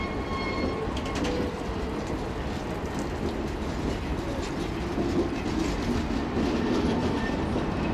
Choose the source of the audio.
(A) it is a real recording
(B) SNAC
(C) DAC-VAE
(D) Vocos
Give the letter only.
A